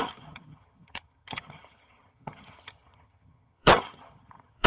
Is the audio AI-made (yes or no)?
yes